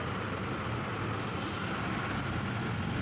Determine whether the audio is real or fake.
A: real